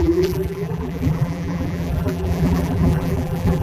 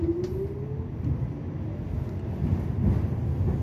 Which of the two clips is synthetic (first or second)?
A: first